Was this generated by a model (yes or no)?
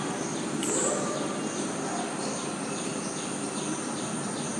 no